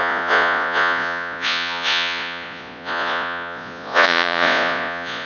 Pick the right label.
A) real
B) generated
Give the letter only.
B